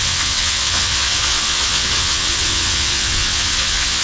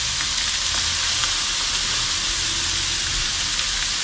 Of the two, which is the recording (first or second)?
second